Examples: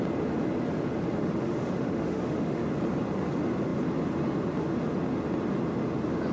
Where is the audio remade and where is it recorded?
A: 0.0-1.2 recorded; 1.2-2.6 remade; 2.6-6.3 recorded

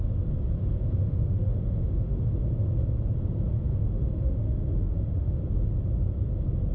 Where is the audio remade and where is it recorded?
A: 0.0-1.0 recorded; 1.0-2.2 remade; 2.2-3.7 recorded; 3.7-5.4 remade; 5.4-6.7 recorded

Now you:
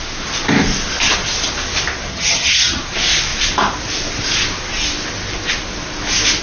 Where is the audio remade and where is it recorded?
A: 0.0-2.1 recorded; 2.1-2.8 remade; 2.8-6.4 recorded

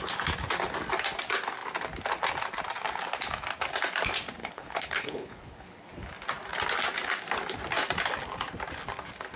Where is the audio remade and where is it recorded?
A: 0.0-4.4 recorded; 4.4-5.9 remade; 5.9-9.4 recorded

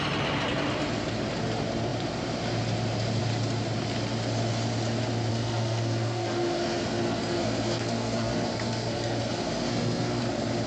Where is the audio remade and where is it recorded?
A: 0.0-5.3 recorded; 5.3-10.2 remade; 10.2-10.7 recorded

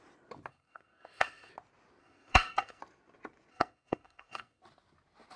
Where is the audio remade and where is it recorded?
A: 0.0-0.5 recorded; 0.5-1.5 remade; 1.5-2.0 recorded; 2.0-2.8 remade; 2.8-3.5 recorded; 3.5-4.6 remade; 4.6-5.4 recorded